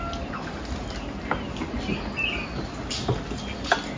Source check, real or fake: real